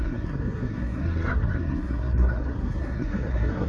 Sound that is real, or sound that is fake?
fake